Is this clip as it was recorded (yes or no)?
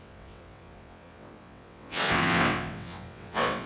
no